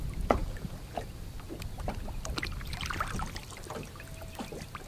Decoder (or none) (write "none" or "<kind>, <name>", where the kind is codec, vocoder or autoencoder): none